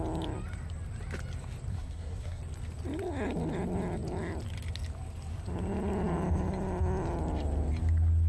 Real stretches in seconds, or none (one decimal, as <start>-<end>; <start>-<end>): 0.0-1.7; 2.4-8.3